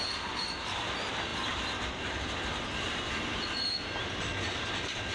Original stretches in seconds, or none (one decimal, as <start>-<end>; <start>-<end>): 0.0-5.1